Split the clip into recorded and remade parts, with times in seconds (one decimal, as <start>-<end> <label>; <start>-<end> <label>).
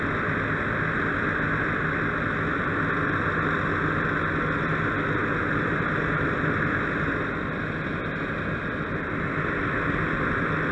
0.0-10.7 recorded